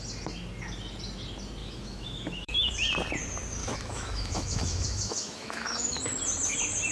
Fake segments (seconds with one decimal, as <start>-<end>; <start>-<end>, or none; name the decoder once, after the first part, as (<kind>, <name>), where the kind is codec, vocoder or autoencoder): 1.6-2.7 (autoencoder, DAC-VAE); 3.6-6.0